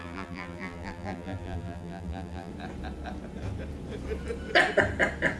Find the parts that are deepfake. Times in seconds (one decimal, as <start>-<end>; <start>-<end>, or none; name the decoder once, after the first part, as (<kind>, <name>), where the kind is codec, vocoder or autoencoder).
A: 0.0-2.5 (vocoder, BigVGAN v2)

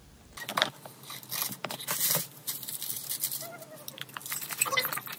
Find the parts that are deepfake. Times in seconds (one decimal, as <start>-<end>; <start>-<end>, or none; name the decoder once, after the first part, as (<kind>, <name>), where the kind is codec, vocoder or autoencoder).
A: 2.4-3.2 (vocoder, BigVGAN v2); 4.2-5.2

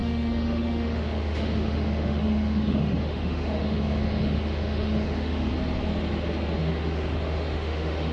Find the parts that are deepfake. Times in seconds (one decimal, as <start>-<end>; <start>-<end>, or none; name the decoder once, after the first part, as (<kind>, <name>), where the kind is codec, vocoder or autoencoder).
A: 0.0-5.5 (autoencoder, DAC-VAE); 6.6-8.1

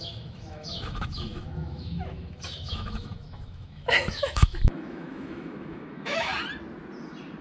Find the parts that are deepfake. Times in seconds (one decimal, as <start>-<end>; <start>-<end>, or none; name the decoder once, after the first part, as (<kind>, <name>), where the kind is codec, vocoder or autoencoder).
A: 0.0-6.3 (autoencoder, DAC-VAE)

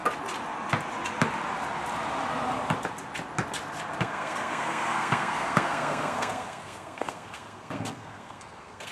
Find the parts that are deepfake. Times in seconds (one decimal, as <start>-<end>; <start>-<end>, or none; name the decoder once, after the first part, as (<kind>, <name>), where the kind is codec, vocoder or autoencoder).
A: 4.0-8.9 (codec, SNAC)

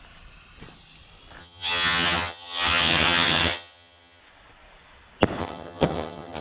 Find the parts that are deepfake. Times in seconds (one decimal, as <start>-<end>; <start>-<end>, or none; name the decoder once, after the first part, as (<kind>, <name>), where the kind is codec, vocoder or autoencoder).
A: 1.4-4.2 (vocoder, HiFi-GAN); 5.4-6.4

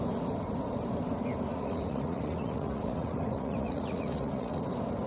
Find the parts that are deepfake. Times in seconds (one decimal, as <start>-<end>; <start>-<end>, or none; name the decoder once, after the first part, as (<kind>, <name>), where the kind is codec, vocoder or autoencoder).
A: 1.5-4.6 (vocoder, Vocos)

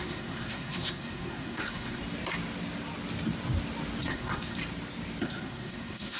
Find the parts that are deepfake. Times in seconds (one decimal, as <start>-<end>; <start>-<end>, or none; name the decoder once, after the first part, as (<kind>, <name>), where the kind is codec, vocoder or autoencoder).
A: 0.0-2.0 (codec, SNAC); 4.0-4.6; 5.2-6.2